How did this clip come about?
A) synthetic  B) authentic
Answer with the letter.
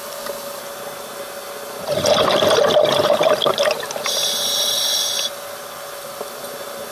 A